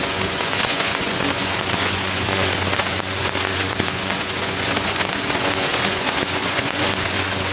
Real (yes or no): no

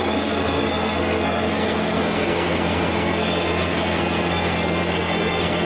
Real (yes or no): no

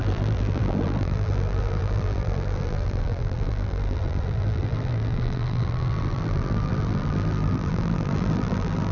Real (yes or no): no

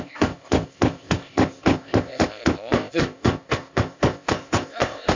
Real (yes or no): no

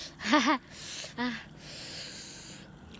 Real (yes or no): yes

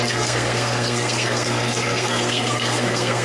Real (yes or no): no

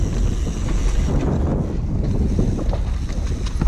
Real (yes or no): yes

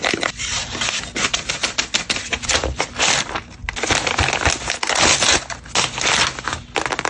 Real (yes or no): yes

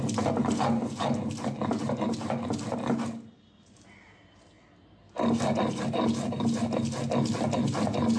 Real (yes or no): yes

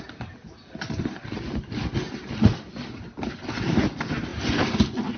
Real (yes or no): yes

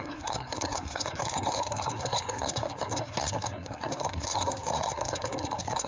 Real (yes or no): no